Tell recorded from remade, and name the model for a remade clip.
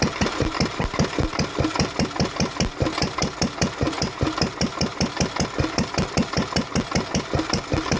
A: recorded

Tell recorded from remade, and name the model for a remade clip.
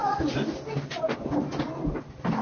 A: recorded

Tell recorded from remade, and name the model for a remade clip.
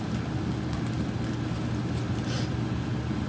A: recorded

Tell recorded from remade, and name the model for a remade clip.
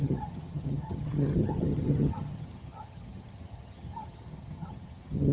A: remade, vocoder, HiFi-GAN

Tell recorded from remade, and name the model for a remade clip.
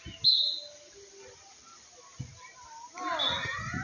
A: recorded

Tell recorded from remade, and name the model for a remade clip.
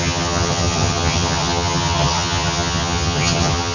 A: remade, vocoder, HiFi-GAN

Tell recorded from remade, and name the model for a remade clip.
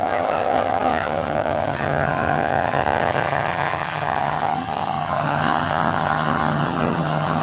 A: remade, vocoder, HiFi-GAN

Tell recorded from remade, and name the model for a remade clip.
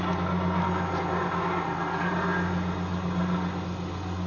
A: recorded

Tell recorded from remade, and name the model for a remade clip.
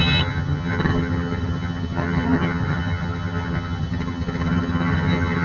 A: remade, vocoder, HiFi-GAN